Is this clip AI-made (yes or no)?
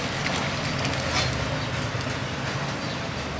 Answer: no